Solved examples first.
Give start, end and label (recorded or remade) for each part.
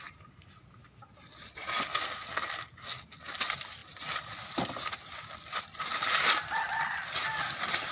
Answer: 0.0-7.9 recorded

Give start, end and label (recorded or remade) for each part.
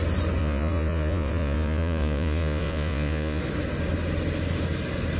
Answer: 0.0-0.4 recorded; 0.4-3.4 remade; 3.4-5.2 recorded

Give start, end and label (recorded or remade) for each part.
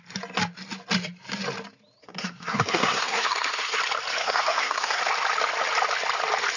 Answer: 0.0-2.0 recorded; 2.0-3.8 remade; 3.8-4.2 recorded; 4.2-5.0 remade; 5.0-6.6 recorded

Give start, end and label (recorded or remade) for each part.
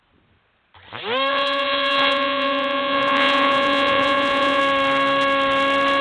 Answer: 0.0-1.3 recorded; 1.3-4.6 remade; 4.6-6.0 recorded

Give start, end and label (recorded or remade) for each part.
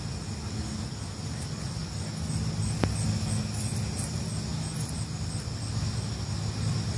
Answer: 0.0-7.0 recorded